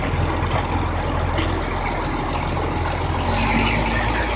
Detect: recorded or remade recorded